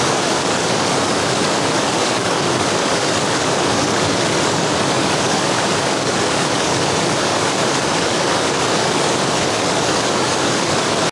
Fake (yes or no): yes